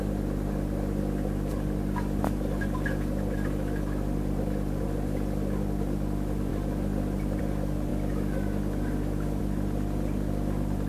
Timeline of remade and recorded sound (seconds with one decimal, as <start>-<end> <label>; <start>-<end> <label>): 0.0-6.5 recorded; 6.5-7.4 remade; 7.4-10.9 recorded